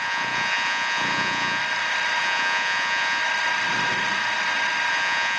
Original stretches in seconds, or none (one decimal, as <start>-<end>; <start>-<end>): 1.6-2.2; 3.2-4.9